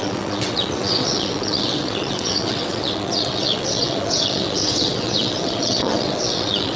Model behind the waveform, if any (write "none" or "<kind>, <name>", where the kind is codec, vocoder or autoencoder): vocoder, WaveNeXt